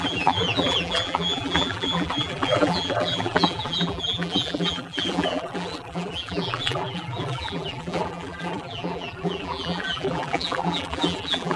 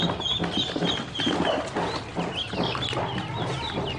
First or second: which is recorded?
second